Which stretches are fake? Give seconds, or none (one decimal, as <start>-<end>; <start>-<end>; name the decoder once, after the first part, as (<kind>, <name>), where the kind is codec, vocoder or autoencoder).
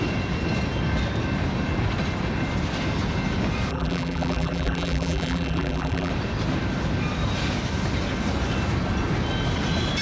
3.7-6.1 (vocoder, BigVGAN v2)